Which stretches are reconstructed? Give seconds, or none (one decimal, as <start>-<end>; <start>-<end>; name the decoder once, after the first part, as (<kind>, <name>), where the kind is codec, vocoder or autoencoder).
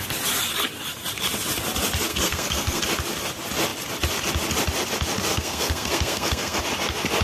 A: 2.1-2.8 (codec, SNAC); 5.3-6.6